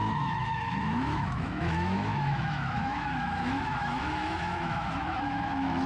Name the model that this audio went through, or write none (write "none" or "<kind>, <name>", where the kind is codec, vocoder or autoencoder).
autoencoder, DAC-VAE